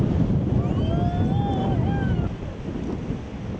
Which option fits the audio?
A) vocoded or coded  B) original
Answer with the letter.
B